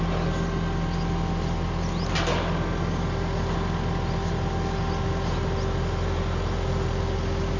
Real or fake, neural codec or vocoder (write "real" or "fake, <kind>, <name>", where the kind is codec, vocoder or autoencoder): real